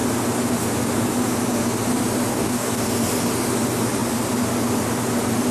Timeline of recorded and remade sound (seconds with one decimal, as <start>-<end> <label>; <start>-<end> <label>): 0.0-2.3 recorded; 2.3-2.8 remade; 2.8-5.5 recorded